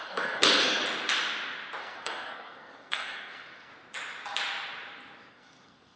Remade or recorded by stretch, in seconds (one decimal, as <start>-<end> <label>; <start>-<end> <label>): 0.0-0.8 remade; 0.8-1.8 recorded; 1.8-3.7 remade; 3.7-5.3 recorded; 5.3-6.0 remade